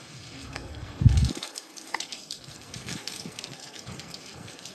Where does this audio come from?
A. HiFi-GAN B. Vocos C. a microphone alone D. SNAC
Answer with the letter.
D